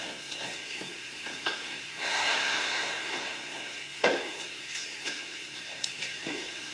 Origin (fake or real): fake